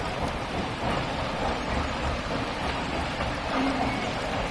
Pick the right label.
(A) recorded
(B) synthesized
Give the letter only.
B